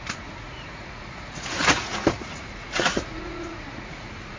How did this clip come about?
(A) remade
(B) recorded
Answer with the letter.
A